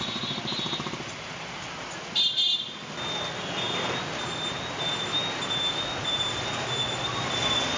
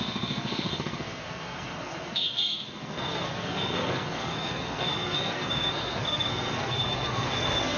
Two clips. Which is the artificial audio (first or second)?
second